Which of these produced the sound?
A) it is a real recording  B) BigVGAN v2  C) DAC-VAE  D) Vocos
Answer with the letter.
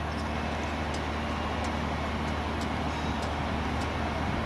A